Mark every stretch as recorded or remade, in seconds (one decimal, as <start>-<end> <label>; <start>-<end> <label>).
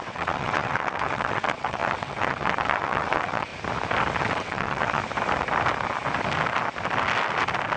0.0-3.5 remade; 3.5-4.2 recorded; 4.2-5.0 remade; 5.0-7.8 recorded